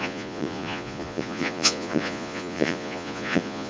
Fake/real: fake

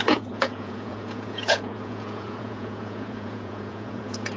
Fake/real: fake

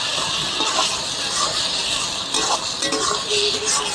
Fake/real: real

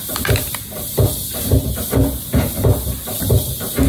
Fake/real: real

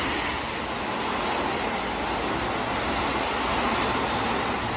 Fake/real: real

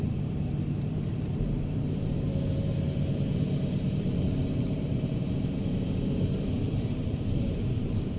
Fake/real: fake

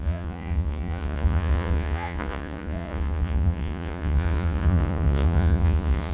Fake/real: fake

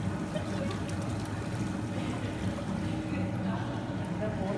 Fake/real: real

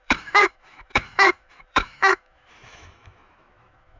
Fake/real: fake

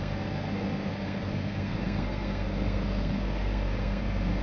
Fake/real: fake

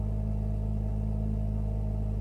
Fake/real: real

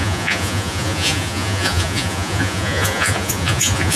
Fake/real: fake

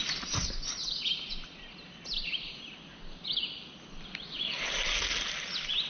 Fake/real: real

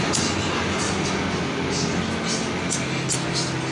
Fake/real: real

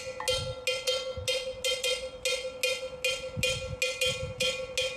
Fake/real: real